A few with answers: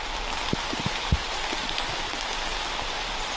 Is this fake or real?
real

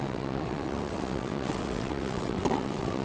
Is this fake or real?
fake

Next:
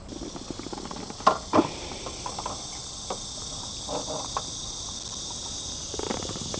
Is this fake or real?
real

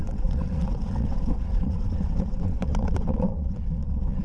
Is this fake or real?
fake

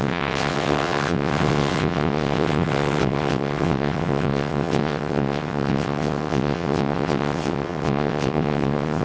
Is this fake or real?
fake